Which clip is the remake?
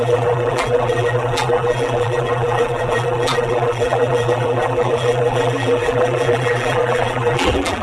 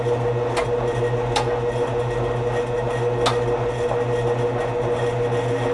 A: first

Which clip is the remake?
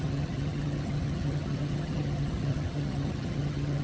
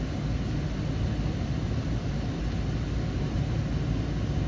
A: first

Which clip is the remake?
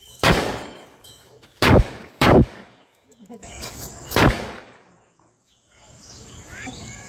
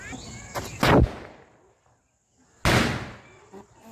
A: first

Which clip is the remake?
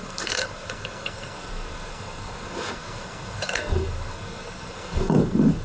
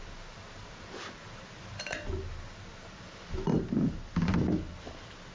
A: first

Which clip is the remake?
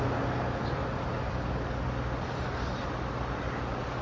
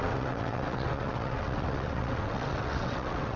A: second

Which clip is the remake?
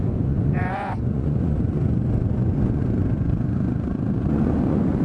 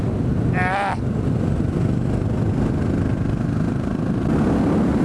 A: first